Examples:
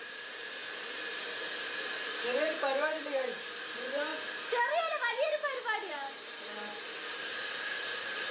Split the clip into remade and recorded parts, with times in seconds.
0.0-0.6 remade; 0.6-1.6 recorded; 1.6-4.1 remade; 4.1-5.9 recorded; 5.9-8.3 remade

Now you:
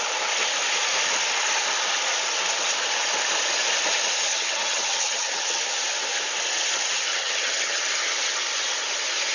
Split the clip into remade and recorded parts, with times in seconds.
0.0-4.3 recorded; 4.3-5.6 remade; 5.6-7.1 recorded; 7.1-7.8 remade; 7.8-9.3 recorded

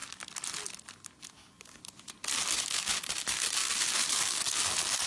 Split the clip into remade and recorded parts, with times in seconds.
0.0-1.3 recorded; 1.3-1.8 remade; 1.8-2.5 recorded; 2.5-5.1 remade

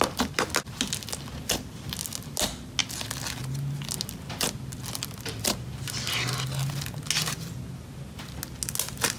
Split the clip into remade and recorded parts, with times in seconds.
0.0-9.2 recorded

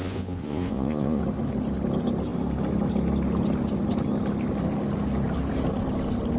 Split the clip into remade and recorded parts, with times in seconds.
0.0-1.2 remade; 1.2-6.4 recorded

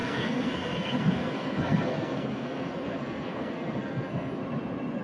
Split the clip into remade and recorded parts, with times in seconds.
0.0-4.4 remade; 4.4-5.0 recorded